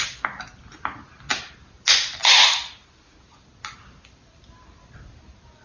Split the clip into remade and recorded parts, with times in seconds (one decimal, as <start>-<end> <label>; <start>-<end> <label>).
0.0-5.6 recorded